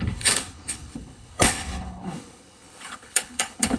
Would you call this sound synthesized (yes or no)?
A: yes